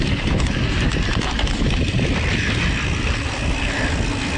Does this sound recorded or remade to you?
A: recorded